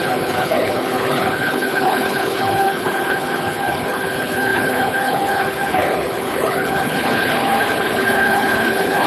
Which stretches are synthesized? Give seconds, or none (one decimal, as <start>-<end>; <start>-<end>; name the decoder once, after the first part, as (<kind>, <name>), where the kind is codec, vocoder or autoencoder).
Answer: 0.0-9.1 (codec, HILCodec)